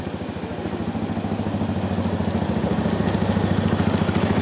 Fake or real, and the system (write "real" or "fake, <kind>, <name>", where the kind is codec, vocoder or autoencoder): real